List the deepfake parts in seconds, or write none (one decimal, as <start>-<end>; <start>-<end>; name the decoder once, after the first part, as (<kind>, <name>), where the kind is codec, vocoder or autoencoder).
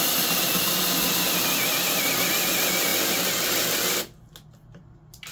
none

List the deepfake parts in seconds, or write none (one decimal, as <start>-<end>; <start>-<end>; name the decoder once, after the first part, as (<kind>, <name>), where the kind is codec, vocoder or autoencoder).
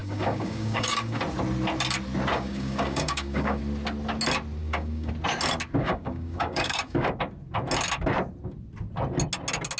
0.0-1.2 (codec, DAC); 2.3-3.6; 4.6-5.1; 5.8-7.1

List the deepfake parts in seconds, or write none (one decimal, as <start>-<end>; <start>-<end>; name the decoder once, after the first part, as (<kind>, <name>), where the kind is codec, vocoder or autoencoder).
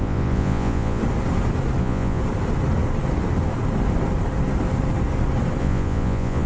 0.0-1.0 (vocoder, Vocos); 1.8-2.2; 5.6-6.5